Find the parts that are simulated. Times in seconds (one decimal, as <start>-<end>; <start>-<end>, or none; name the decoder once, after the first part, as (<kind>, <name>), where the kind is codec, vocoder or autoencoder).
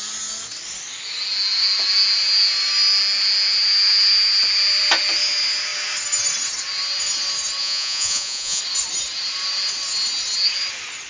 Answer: 7.6-8.6 (vocoder, Vocos)